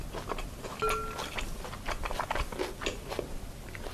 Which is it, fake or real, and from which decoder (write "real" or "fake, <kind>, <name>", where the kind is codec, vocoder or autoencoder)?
real